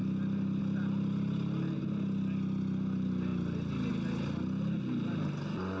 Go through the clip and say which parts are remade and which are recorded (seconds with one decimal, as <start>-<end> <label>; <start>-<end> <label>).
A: 0.0-5.8 recorded